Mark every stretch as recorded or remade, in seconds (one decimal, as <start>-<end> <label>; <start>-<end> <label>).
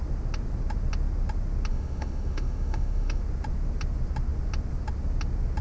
0.0-1.7 recorded; 1.7-3.2 remade; 3.2-5.6 recorded